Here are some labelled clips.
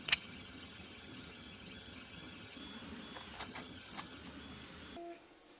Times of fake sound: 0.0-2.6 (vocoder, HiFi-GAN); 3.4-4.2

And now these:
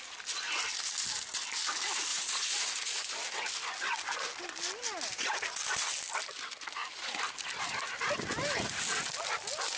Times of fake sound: 2.1-3.1 (vocoder, Vocos)

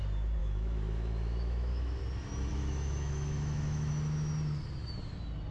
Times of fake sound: 0.4-2.0 (autoencoder, DAC-VAE); 2.5-3.9

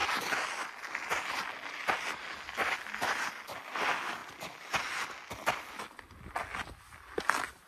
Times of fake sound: none